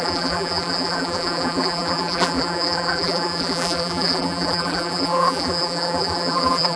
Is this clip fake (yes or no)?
yes